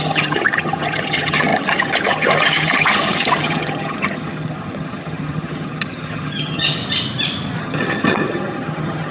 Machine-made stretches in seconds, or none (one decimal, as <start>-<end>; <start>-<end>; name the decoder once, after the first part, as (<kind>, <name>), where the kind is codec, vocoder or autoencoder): 0.0-6.8 (vocoder, HiFi-GAN); 7.6-9.1